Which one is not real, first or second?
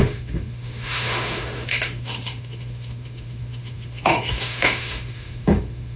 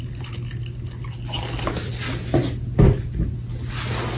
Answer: first